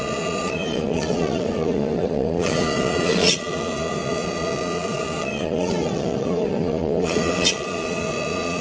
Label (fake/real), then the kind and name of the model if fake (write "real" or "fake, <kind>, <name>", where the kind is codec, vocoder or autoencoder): fake, vocoder, Vocos